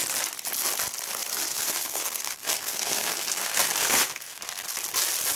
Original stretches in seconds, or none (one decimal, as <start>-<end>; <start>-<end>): 0.0-1.5; 4.7-5.4